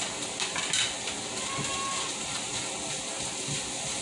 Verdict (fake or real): real